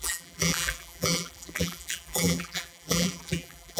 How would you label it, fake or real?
fake